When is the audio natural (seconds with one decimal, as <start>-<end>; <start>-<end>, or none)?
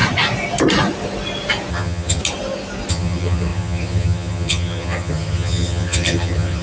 0.0-1.7; 2.2-2.9